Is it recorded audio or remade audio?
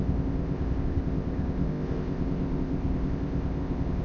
remade